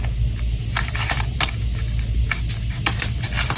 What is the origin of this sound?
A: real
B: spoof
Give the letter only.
A